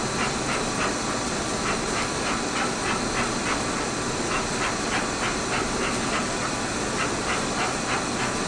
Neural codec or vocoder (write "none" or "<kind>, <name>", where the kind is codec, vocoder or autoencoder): none